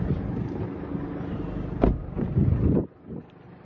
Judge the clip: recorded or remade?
recorded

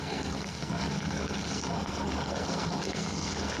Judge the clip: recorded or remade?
remade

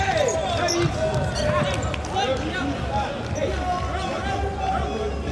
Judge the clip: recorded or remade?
recorded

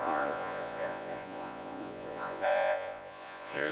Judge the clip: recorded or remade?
remade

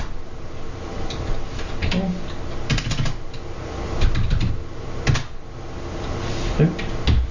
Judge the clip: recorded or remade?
recorded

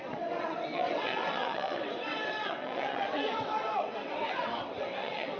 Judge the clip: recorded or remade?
remade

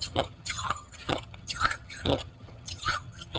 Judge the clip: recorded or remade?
remade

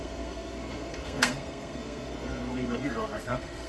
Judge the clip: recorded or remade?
remade